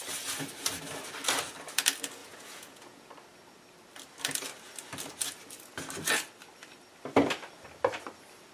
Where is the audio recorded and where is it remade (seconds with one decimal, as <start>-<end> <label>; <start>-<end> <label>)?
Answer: 0.0-2.2 recorded; 2.2-3.1 remade; 3.1-8.5 recorded